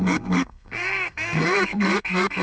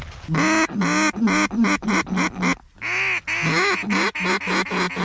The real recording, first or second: second